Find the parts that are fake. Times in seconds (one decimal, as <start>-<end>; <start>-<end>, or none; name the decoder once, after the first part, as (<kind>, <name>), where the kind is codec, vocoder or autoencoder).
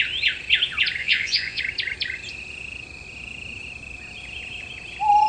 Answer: 1.0-1.6 (vocoder, Vocos)